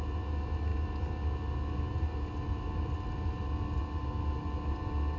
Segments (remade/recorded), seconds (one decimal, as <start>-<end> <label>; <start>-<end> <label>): 0.0-5.2 recorded